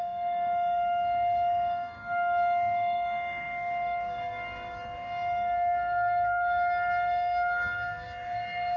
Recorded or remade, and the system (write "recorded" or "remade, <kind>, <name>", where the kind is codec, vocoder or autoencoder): remade, codec, DAC